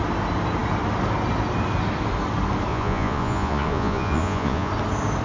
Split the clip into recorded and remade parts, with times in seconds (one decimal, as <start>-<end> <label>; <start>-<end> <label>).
0.0-2.7 recorded; 2.7-4.7 remade; 4.7-5.2 recorded